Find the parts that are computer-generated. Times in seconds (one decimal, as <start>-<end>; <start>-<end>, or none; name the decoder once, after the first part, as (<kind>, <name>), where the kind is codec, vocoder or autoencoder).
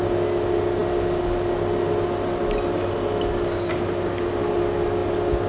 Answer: none